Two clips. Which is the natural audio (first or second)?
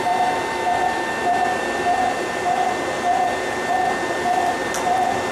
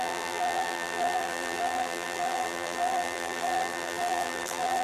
first